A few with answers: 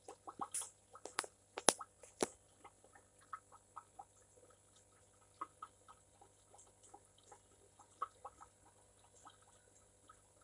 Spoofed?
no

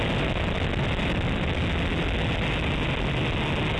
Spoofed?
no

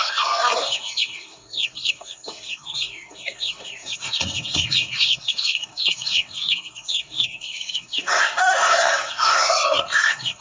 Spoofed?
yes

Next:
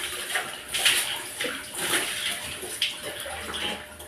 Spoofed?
no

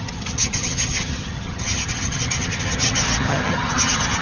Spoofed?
yes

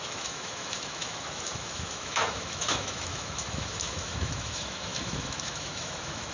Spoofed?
yes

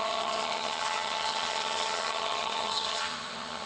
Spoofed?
yes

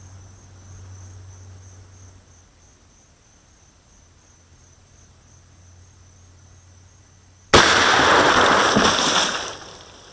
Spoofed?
no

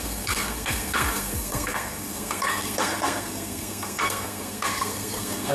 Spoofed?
yes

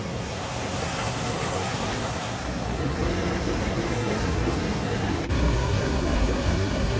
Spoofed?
yes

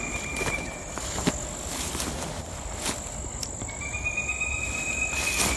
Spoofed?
no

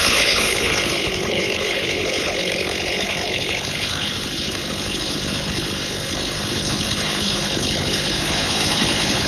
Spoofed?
yes